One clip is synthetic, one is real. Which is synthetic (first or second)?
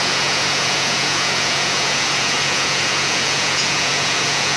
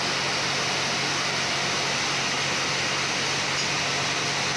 first